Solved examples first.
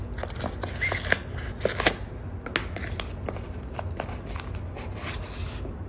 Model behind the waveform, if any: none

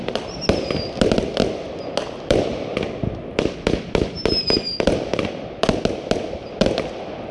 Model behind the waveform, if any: none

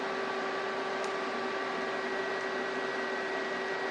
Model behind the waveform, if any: none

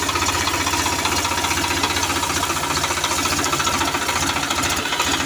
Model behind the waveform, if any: none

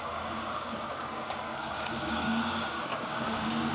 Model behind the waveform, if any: codec, DAC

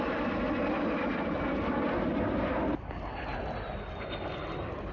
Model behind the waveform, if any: none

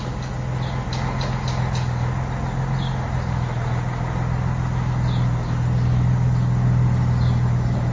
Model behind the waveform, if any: none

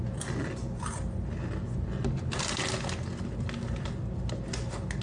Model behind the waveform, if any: none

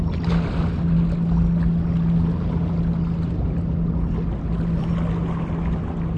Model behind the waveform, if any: none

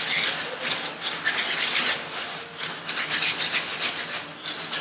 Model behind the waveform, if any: none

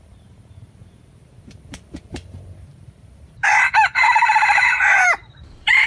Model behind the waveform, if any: vocoder, BigVGAN v2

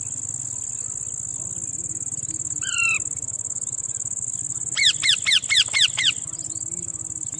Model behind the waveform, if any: none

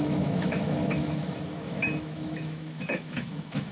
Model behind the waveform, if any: autoencoder, DAC-VAE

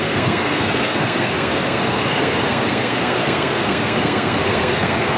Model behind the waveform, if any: codec, SNAC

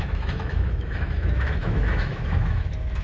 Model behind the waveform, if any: autoencoder, DAC-VAE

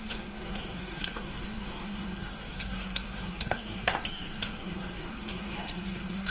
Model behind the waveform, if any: codec, SNAC